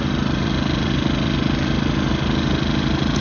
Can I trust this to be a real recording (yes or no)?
yes